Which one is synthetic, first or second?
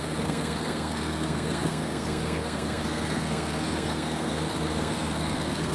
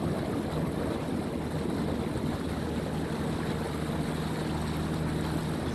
first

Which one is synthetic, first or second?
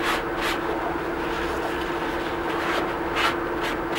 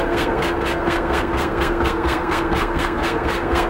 second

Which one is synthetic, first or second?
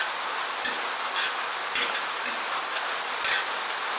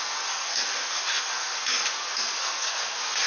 second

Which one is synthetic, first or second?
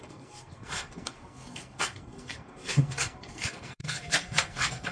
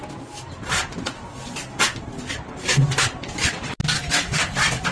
first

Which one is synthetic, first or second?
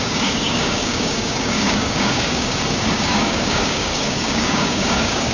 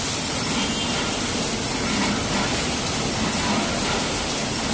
first